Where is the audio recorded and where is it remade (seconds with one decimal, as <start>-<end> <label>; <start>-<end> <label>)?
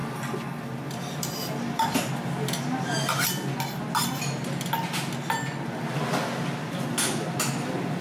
0.0-2.1 remade; 2.1-8.0 recorded